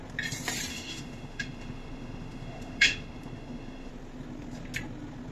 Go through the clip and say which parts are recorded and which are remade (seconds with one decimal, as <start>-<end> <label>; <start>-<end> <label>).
0.0-0.7 recorded; 0.7-3.9 remade; 3.9-5.3 recorded

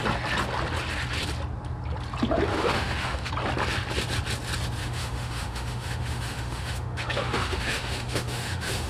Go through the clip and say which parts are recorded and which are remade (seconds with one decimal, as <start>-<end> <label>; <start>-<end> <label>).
0.0-2.5 recorded; 2.5-3.3 remade; 3.3-4.8 recorded; 4.8-8.9 remade